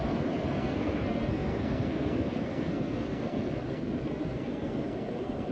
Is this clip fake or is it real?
fake